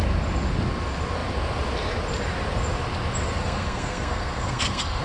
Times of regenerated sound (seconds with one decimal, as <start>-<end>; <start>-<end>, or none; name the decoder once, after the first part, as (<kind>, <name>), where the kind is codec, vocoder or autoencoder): 3.4-5.0 (codec, SNAC)